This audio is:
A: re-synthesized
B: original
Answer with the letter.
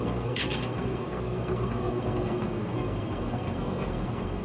A